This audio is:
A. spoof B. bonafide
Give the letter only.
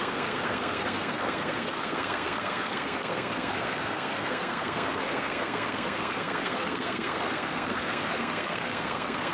A